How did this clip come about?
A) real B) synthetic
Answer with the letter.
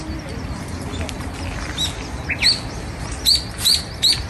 A